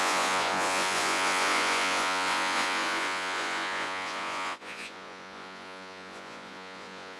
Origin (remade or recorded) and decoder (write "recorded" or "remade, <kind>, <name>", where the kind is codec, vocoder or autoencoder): remade, vocoder, Vocos